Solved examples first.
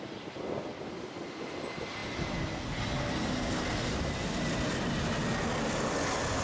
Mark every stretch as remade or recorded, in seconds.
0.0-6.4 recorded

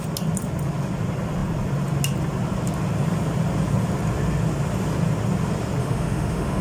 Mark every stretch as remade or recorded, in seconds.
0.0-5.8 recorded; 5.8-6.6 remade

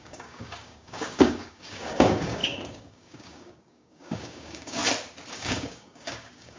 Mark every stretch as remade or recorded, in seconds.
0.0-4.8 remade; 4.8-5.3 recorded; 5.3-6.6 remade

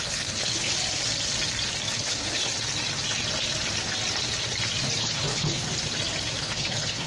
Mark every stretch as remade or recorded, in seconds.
0.0-0.7 remade; 0.7-2.0 recorded; 2.0-2.5 remade; 2.5-5.0 recorded; 5.0-5.6 remade; 5.6-6.4 recorded; 6.4-7.1 remade

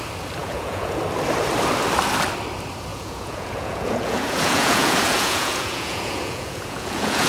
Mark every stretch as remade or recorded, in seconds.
0.0-0.4 recorded; 0.4-1.0 remade; 1.0-2.9 recorded; 2.9-7.3 remade

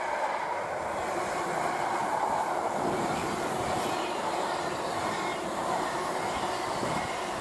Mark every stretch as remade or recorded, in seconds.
0.0-3.2 recorded; 3.2-4.5 remade; 4.5-5.3 recorded; 5.3-5.9 remade; 5.9-7.4 recorded

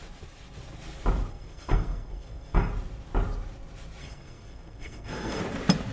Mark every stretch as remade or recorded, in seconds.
0.0-1.3 recorded; 1.3-2.7 remade; 2.7-4.0 recorded; 4.0-5.4 remade; 5.4-5.9 recorded

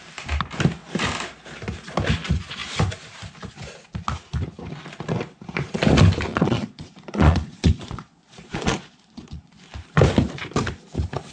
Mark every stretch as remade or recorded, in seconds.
0.0-6.3 recorded; 6.3-9.5 remade; 9.5-11.3 recorded